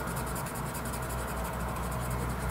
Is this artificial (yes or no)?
no